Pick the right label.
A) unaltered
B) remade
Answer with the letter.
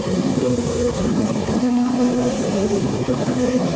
B